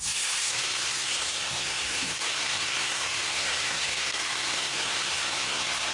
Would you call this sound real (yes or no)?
no